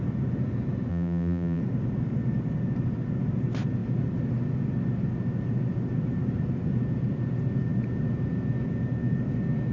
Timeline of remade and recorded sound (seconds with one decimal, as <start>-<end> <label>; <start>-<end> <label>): 0.0-0.9 recorded; 0.9-1.6 remade; 1.6-9.7 recorded